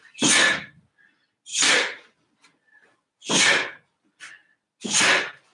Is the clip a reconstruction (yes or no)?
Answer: no